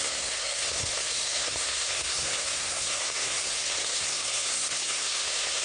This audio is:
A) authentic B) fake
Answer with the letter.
B